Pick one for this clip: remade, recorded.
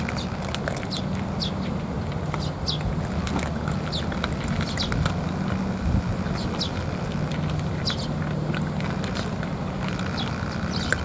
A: recorded